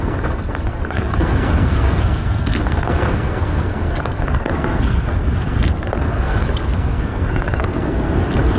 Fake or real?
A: fake